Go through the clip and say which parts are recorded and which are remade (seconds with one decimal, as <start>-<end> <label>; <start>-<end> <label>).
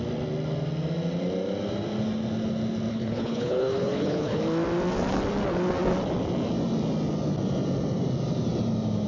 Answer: 0.0-2.9 recorded; 2.9-4.4 remade; 4.4-9.1 recorded